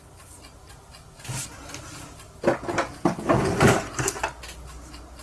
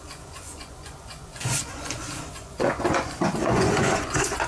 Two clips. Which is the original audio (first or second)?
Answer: first